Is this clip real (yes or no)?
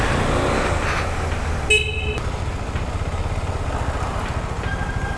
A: yes